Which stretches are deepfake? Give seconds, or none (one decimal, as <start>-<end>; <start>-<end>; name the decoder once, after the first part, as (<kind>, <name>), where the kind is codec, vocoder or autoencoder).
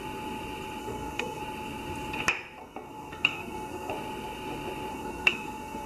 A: 0.8-1.4 (codec, SNAC); 2.6-3.9; 4.9-5.9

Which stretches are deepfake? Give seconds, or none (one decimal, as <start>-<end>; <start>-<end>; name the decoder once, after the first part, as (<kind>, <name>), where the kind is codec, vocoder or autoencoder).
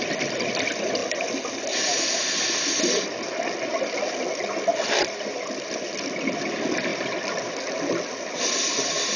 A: none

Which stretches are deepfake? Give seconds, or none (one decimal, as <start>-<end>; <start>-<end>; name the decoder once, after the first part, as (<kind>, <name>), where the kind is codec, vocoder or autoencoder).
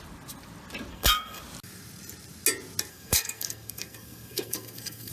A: 0.9-1.4 (codec, SNAC); 2.9-5.1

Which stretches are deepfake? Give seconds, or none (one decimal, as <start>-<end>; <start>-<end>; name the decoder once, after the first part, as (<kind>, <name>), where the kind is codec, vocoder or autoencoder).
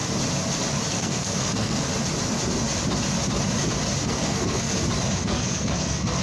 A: 0.9-1.9 (codec, SNAC); 4.0-4.7; 5.2-6.2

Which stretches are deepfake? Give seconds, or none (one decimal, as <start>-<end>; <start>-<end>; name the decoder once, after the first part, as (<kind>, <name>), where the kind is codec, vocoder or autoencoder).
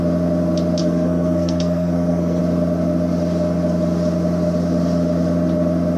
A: 0.8-2.4 (codec, SNAC)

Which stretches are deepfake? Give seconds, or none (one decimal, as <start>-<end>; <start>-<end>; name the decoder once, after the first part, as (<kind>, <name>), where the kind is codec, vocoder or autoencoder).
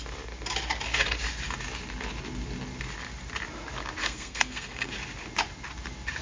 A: 4.0-4.9 (codec, SNAC)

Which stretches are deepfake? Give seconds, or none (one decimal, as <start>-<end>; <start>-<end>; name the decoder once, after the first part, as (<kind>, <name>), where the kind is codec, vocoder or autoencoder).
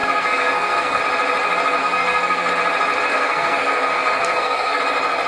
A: 0.0-1.0 (codec, SNAC); 1.8-2.5; 3.1-4.8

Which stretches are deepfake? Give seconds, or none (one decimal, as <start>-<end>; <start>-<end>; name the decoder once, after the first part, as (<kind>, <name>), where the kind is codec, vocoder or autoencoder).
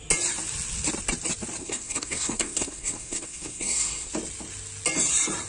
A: 1.6-4.1 (codec, SNAC)